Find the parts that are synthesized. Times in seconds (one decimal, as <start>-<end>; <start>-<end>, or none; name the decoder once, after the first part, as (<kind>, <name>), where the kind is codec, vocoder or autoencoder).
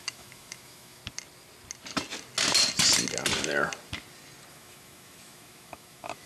0.0-1.0 (autoencoder, DAC-VAE); 4.5-6.3